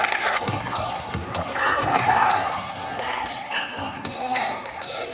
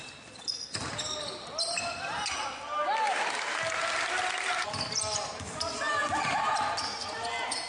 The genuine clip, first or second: second